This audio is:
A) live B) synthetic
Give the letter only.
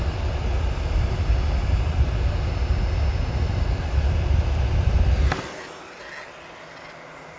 A